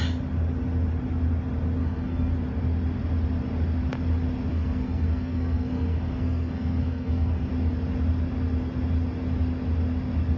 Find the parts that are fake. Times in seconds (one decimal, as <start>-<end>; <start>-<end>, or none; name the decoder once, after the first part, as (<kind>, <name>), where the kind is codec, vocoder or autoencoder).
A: 1.8-2.3 (codec, SNAC); 4.5-7.5